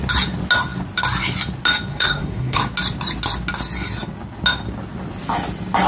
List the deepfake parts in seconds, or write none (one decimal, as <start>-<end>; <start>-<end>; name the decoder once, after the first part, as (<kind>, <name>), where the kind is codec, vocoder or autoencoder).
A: 1.9-2.6 (codec, SNAC)